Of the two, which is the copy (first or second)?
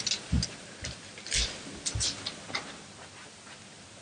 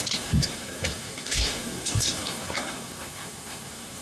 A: second